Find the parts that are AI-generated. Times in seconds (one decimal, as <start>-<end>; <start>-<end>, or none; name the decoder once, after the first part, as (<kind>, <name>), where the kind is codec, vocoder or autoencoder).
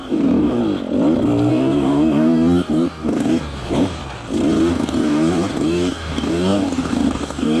0.0-0.6 (codec, DAC); 1.5-4.0; 4.7-7.6